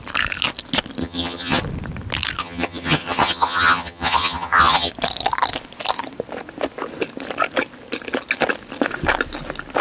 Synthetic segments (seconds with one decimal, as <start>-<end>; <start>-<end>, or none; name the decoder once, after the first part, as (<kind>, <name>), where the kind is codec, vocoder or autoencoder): 1.0-1.6 (vocoder, HiFi-GAN); 2.4-4.9